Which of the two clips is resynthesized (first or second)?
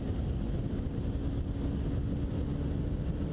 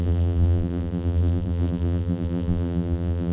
second